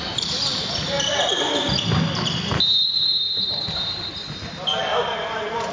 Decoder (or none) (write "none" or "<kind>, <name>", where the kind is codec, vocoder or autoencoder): none